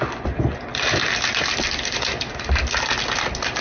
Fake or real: real